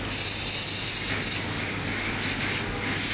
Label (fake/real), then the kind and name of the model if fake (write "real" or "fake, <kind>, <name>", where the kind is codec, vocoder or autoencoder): real